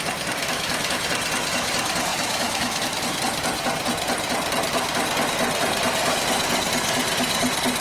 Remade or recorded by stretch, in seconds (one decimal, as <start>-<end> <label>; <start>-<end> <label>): 0.0-0.4 recorded; 0.4-1.0 remade; 1.0-2.1 recorded; 2.1-3.2 remade; 3.2-7.8 recorded